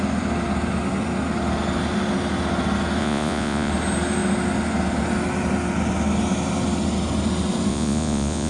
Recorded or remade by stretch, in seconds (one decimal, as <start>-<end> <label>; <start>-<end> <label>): 0.0-3.0 recorded; 3.0-3.7 remade; 3.7-7.7 recorded; 7.7-8.5 remade